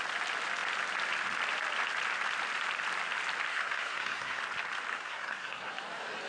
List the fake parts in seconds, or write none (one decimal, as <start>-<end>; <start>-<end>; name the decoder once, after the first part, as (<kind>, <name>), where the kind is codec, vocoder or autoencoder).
3.5-4.4 (codec, SNAC); 4.9-5.7